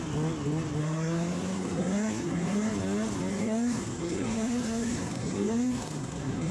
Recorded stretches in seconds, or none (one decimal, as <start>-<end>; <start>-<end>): 0.0-0.8; 2.7-3.3